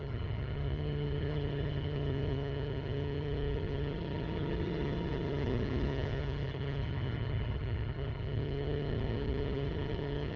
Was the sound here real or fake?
fake